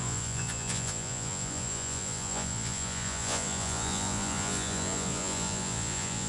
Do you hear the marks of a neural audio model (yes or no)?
yes